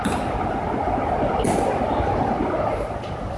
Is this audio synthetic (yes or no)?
no